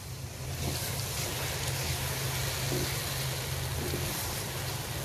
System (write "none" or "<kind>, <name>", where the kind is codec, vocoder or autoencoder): none